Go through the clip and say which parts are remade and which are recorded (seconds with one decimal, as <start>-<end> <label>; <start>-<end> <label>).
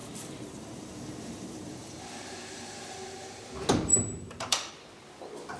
0.0-3.4 remade; 3.4-3.9 recorded; 3.9-4.7 remade; 4.7-5.6 recorded